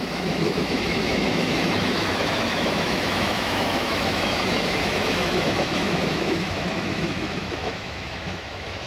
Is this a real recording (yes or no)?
no